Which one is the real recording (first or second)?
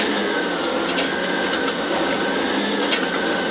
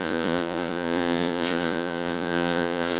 first